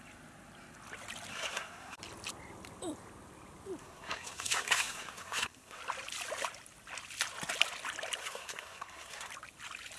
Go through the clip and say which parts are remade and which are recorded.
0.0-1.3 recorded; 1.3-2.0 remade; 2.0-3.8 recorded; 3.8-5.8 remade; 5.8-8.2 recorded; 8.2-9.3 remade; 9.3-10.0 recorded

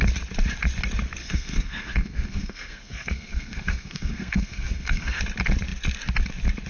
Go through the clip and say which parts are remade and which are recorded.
0.0-1.2 recorded; 1.2-5.2 remade; 5.2-6.7 recorded

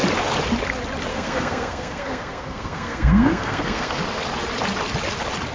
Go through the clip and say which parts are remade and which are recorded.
0.0-1.1 recorded; 1.1-4.0 remade; 4.0-5.5 recorded